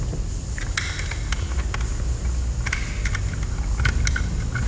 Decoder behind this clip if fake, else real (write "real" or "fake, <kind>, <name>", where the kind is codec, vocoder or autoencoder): real